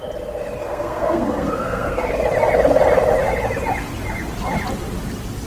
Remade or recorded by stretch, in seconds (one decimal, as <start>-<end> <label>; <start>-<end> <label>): 0.0-0.6 recorded; 0.6-2.1 remade; 2.1-5.5 recorded